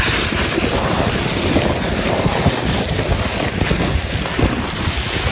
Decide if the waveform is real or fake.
real